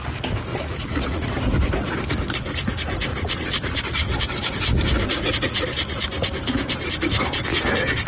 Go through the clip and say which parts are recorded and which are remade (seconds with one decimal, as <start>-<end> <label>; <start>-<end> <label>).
0.0-0.5 recorded; 0.5-1.3 remade; 1.3-3.1 recorded; 3.1-3.8 remade; 3.8-8.1 recorded